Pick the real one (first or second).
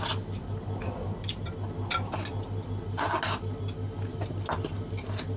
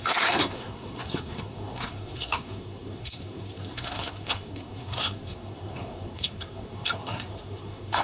first